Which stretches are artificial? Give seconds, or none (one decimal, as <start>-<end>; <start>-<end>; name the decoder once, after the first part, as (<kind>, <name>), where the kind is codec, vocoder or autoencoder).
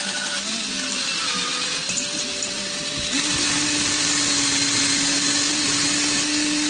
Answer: none